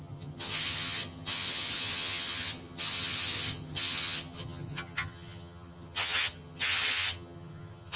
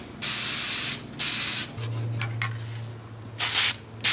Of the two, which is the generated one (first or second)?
first